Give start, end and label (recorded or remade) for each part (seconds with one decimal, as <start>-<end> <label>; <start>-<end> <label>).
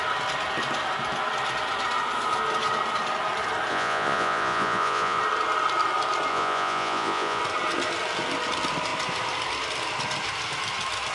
0.0-3.7 recorded; 3.7-5.2 remade; 5.2-6.3 recorded; 6.3-7.4 remade; 7.4-11.1 recorded